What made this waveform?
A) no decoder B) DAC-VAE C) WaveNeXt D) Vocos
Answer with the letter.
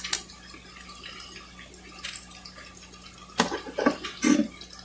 A